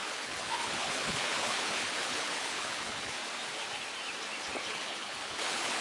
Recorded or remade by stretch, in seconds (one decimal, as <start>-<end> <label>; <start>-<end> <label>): 0.0-3.2 remade; 3.2-4.7 recorded; 4.7-5.8 remade